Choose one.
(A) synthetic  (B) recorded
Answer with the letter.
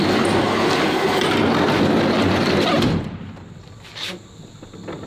B